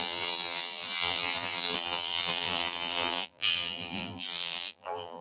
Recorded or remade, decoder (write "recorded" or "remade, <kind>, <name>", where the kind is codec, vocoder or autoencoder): remade, vocoder, BigVGAN v2